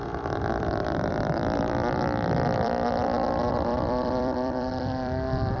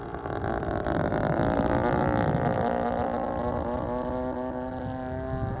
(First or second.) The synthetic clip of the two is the first